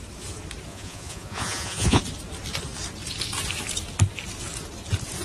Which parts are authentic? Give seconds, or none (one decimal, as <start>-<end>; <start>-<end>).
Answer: 0.0-0.7; 2.0-5.2